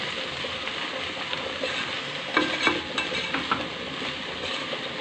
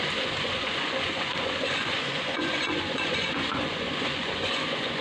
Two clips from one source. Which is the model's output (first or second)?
second